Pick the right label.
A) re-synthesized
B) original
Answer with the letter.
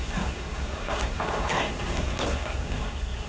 A